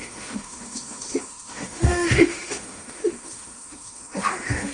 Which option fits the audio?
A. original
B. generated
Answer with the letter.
B